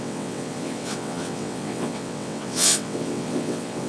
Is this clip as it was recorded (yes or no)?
no